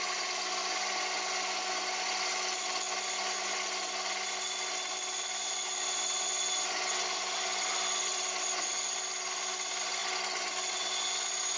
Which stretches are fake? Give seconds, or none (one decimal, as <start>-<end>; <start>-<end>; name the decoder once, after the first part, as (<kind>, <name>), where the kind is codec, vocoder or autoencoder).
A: none